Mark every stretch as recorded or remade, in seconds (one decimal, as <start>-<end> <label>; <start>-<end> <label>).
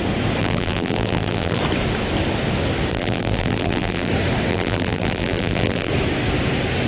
0.0-0.4 recorded; 0.4-1.6 remade; 1.6-2.9 recorded; 2.9-4.1 remade; 4.1-4.5 recorded; 4.5-5.9 remade; 5.9-6.9 recorded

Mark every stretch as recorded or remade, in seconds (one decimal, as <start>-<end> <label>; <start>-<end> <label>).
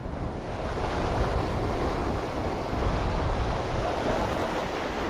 0.0-3.1 recorded; 3.1-4.4 remade; 4.4-5.1 recorded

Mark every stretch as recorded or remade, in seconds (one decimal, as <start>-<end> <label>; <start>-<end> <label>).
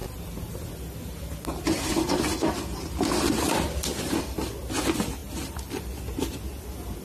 0.0-7.0 recorded